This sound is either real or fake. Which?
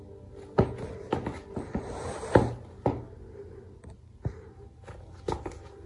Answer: real